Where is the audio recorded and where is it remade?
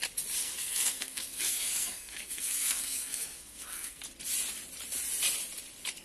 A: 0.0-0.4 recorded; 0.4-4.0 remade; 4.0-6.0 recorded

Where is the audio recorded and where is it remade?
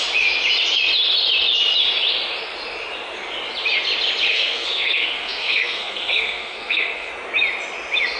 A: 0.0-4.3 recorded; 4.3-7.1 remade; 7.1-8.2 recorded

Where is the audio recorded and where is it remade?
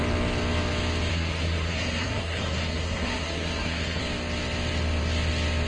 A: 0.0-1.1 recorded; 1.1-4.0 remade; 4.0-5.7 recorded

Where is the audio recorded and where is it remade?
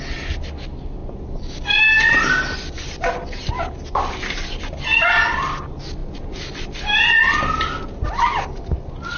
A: 0.0-9.2 recorded